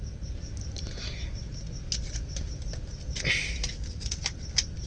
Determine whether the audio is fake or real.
real